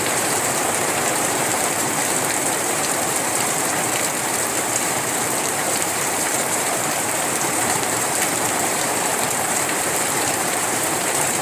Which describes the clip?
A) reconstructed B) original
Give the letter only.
A